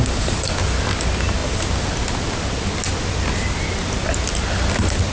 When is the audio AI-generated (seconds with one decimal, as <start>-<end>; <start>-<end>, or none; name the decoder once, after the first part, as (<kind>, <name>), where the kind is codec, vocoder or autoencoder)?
none